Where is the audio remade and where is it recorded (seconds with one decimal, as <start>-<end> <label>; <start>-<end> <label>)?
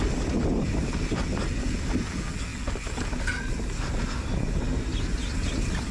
0.0-5.9 recorded